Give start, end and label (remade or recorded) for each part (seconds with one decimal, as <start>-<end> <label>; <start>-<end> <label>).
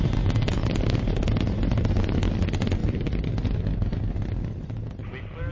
0.0-0.6 recorded; 0.6-2.3 remade; 2.3-2.8 recorded; 2.8-3.3 remade; 3.3-5.5 recorded